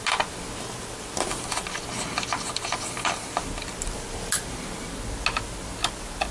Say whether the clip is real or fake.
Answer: real